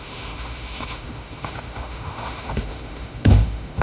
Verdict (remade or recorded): remade